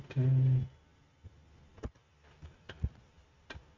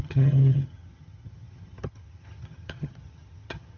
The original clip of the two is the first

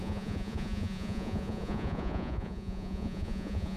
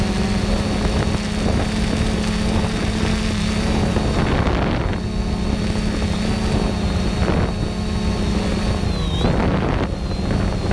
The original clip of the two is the second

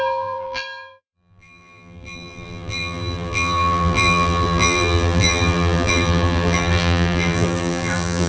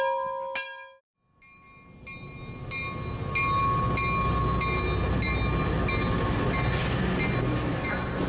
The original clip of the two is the second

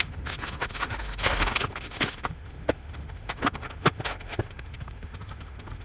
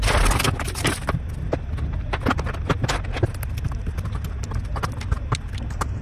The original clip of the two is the second